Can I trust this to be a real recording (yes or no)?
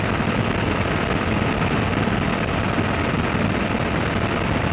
yes